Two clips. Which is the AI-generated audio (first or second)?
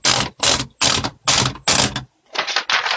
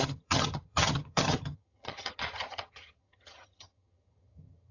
second